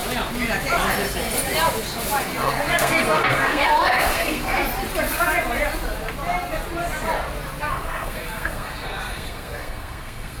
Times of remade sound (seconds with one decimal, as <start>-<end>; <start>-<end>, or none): 2.2-4.6; 7.6-10.4